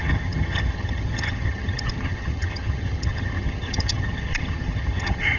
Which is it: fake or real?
fake